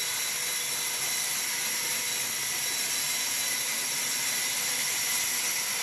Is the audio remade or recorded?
recorded